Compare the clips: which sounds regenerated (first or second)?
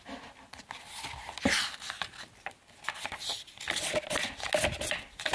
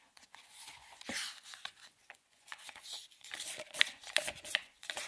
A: second